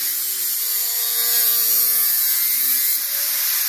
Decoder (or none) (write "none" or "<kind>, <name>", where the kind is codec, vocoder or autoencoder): none